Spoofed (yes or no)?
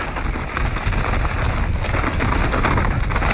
no